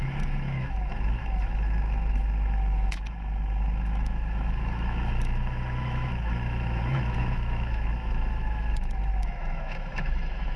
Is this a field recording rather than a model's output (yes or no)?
no